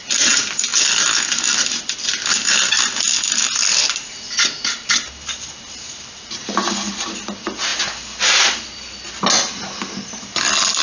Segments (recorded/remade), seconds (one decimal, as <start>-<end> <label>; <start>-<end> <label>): 0.0-10.8 recorded